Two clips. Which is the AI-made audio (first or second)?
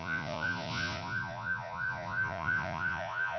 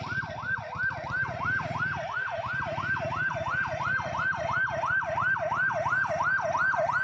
first